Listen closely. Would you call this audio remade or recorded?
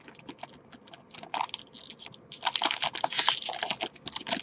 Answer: recorded